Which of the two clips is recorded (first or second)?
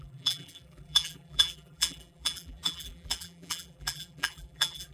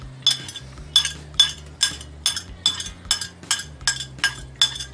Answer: second